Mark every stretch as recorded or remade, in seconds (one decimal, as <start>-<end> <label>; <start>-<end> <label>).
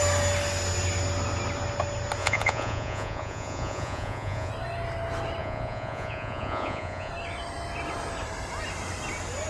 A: 0.0-2.2 recorded; 2.2-4.5 remade; 4.5-5.4 recorded; 5.4-7.1 remade; 7.1-9.5 recorded